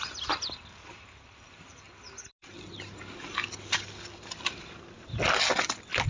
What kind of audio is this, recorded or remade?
remade